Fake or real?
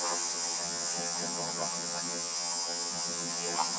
fake